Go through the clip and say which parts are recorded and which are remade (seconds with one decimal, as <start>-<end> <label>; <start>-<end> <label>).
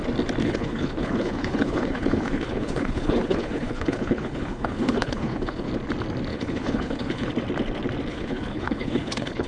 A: 0.0-0.4 recorded; 0.4-5.7 remade; 5.7-6.3 recorded; 6.3-7.3 remade; 7.3-8.1 recorded; 8.1-9.5 remade